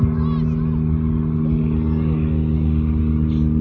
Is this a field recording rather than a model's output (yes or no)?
yes